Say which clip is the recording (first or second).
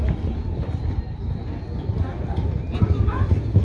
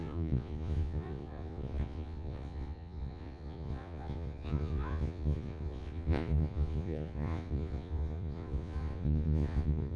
first